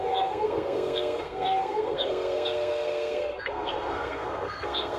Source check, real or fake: fake